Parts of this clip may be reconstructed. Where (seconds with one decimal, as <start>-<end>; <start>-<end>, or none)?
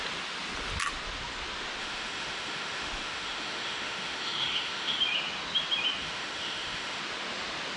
1.8-5.0; 6.0-7.0